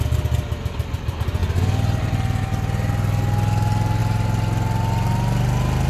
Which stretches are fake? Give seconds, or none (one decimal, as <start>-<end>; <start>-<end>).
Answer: none